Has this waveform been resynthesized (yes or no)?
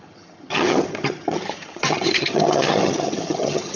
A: yes